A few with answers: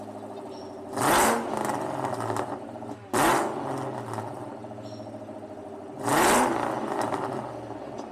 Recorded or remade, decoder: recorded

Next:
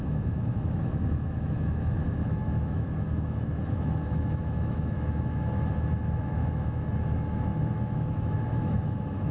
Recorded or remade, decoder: remade, autoencoder, DAC-VAE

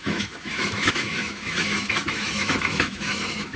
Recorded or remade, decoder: remade, autoencoder, DAC-VAE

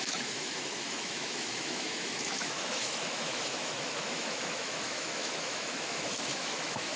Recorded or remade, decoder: remade, autoencoder, DAC-VAE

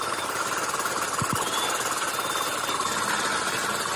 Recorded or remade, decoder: recorded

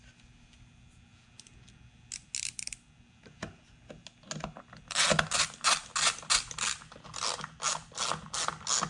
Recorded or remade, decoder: recorded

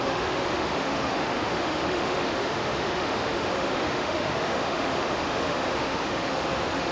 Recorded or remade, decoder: remade, autoencoder, DAC-VAE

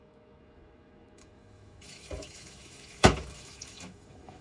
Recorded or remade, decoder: remade, autoencoder, DAC-VAE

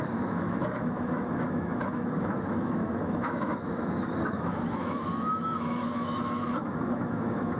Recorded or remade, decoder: remade, autoencoder, DAC-VAE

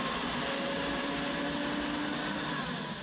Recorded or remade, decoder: recorded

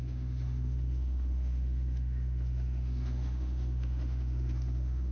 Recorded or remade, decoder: remade, autoencoder, DAC-VAE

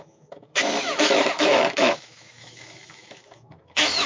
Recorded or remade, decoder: remade, autoencoder, DAC-VAE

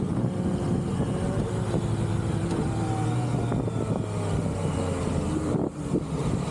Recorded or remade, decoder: recorded